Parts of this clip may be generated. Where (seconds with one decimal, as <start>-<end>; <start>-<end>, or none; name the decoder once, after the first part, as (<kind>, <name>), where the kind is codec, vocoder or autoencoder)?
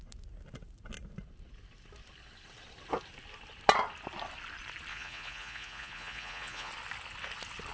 4.9-6.7 (vocoder, Vocos)